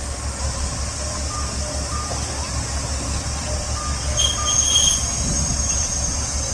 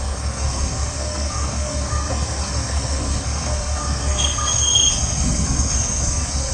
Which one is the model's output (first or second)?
second